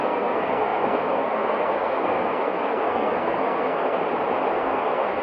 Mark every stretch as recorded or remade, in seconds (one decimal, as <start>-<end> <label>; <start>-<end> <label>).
0.0-4.0 remade; 4.0-4.5 recorded; 4.5-5.2 remade